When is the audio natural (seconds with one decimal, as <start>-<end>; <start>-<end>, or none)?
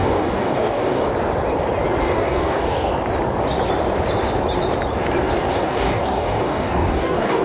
1.1-2.0; 2.9-5.5